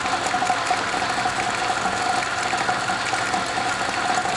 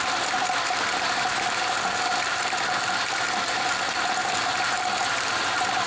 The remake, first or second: second